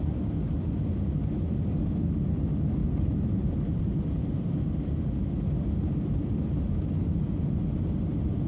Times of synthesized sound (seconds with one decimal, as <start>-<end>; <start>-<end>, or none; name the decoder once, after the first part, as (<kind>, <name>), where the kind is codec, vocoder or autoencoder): 2.8-5.0 (vocoder, BigVGAN v2)